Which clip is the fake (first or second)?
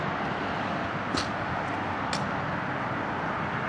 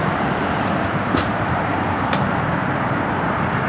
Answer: second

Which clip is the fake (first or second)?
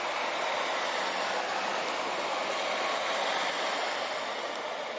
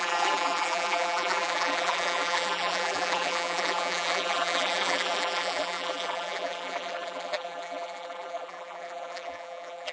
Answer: second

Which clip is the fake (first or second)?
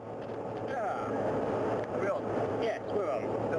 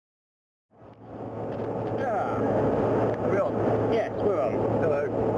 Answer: first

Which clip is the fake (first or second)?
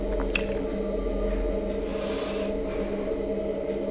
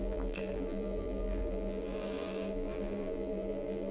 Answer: second